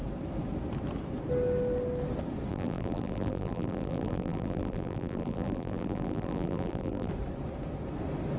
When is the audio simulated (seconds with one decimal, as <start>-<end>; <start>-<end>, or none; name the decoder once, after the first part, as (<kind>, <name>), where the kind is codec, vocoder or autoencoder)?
2.5-7.1 (vocoder, BigVGAN v2)